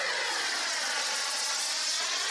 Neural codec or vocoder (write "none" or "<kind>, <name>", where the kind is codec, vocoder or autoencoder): none